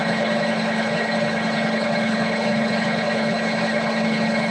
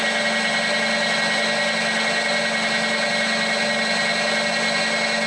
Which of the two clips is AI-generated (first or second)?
first